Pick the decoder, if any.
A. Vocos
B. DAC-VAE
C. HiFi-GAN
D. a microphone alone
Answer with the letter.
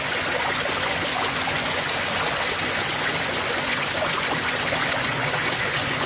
A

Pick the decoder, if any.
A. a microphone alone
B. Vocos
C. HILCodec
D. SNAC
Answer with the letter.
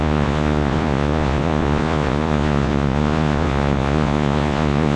B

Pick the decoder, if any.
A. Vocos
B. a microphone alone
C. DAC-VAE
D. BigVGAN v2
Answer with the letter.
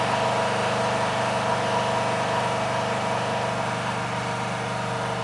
B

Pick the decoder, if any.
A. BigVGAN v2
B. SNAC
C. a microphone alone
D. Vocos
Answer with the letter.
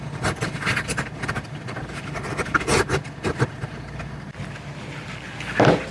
C